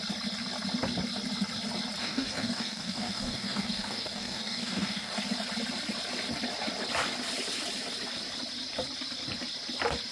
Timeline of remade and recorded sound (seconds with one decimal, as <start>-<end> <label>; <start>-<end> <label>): 0.0-2.0 recorded; 2.0-5.1 remade; 5.1-10.1 recorded